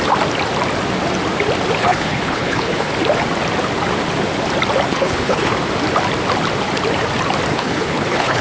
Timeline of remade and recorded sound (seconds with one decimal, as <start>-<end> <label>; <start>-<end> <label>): 0.0-1.8 recorded; 1.8-2.9 remade; 2.9-4.9 recorded; 4.9-5.5 remade; 5.5-7.5 recorded; 7.5-8.4 remade